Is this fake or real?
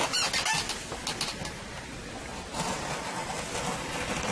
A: real